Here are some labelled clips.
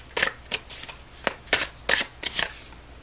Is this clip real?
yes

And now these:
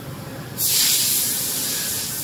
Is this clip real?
yes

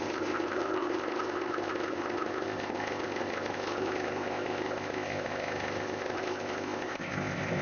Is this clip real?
no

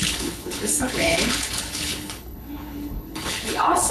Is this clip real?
no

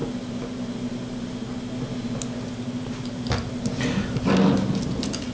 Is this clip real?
yes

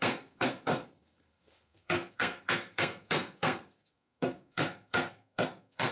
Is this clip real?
no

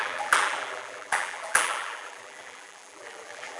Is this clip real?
no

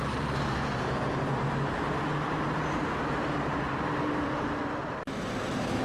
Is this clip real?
no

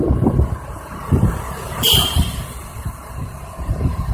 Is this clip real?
no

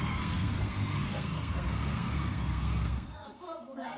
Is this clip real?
no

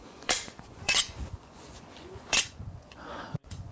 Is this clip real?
no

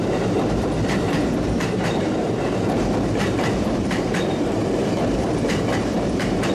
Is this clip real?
no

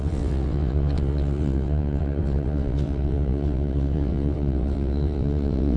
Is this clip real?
no